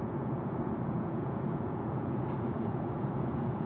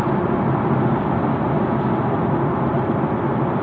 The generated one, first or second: first